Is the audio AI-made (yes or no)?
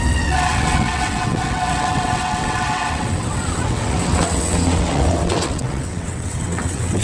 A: yes